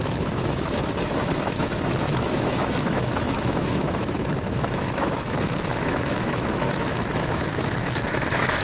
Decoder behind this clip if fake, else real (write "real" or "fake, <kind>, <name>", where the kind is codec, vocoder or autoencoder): fake, autoencoder, DAC-VAE